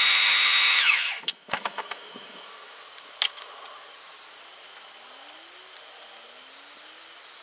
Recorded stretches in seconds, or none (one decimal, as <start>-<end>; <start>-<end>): 2.8-7.4